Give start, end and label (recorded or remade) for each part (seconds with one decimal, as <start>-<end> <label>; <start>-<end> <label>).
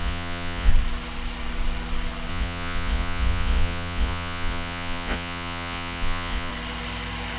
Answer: 0.0-0.7 remade; 0.7-2.3 recorded; 2.3-6.5 remade; 6.5-7.4 recorded